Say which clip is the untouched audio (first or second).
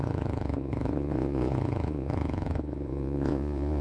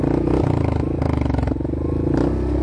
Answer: second